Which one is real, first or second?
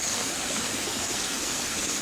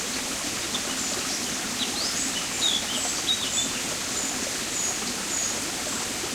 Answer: second